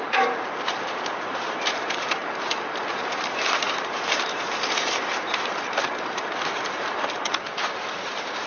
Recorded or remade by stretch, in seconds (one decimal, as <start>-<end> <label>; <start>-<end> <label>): 0.0-8.5 remade

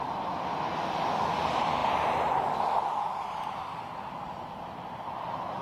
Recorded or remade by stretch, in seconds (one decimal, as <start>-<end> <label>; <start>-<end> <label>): 0.0-5.6 recorded

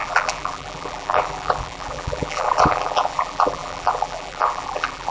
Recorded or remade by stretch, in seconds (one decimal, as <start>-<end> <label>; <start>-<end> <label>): 0.0-5.1 remade

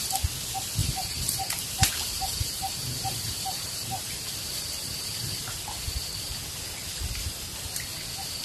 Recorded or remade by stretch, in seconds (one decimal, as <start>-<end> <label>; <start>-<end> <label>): 0.0-0.8 recorded; 0.8-5.5 remade; 5.5-8.4 recorded